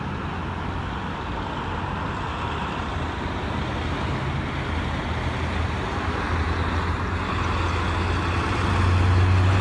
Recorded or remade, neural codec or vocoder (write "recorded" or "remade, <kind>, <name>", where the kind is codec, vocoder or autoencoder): recorded